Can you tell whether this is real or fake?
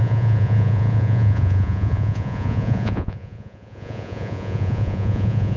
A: fake